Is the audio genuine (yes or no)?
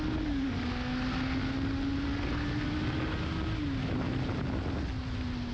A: yes